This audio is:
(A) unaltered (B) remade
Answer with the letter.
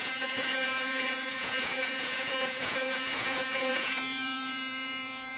B